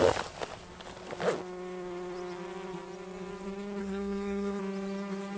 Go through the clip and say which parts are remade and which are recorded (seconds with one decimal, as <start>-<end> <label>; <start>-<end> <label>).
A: 0.0-3.8 recorded; 3.8-4.6 remade; 4.6-5.4 recorded

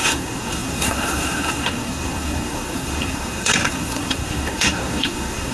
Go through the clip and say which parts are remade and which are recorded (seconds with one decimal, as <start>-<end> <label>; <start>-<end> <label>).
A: 0.0-5.5 remade

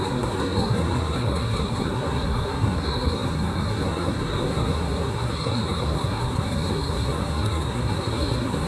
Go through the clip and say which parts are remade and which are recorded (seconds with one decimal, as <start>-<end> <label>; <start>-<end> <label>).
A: 0.0-8.7 remade

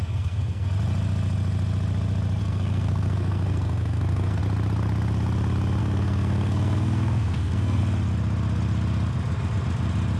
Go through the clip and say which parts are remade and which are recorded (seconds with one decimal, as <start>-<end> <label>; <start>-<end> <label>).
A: 0.0-0.7 remade; 0.7-2.4 recorded; 2.4-4.4 remade; 4.4-5.8 recorded; 5.8-7.8 remade; 7.8-10.2 recorded

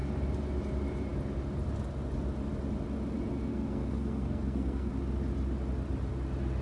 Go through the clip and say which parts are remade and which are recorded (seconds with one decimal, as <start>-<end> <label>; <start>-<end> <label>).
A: 0.0-3.5 recorded; 3.5-4.9 remade; 4.9-6.6 recorded

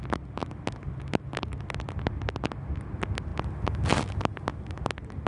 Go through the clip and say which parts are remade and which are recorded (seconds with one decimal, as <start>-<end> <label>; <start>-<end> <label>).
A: 0.0-5.3 recorded

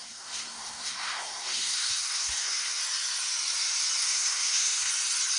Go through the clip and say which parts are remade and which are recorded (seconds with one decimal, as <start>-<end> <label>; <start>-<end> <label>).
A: 0.0-2.8 remade; 2.8-4.0 recorded; 4.0-4.9 remade; 4.9-5.4 recorded